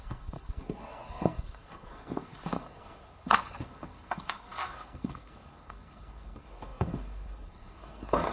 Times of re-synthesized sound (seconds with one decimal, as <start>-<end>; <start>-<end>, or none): 0.0-8.3